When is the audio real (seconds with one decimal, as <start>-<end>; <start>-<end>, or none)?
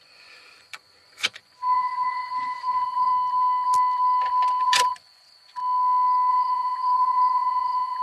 3.1-4.6; 5.6-6.3